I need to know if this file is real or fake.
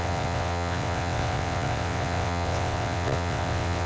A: fake